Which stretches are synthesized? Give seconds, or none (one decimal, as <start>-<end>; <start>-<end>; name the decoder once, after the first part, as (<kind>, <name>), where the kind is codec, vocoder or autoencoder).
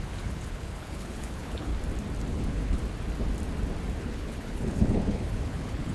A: 0.0-1.7 (codec, HILCodec); 2.3-2.8; 4.0-5.9